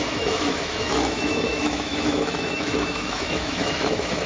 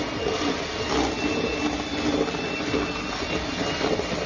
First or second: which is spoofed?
first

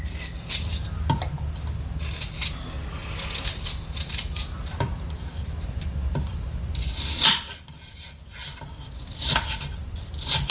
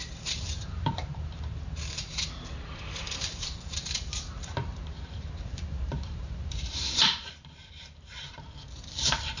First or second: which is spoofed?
second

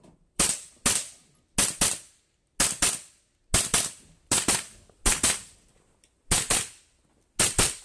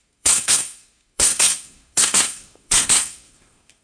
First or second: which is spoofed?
second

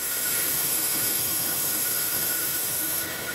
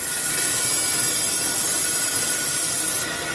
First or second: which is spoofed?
first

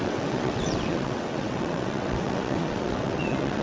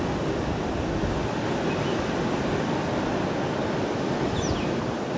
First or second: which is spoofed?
first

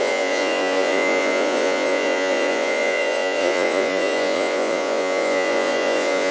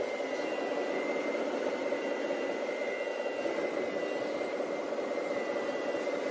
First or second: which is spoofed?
first